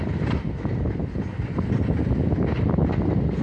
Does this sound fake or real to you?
real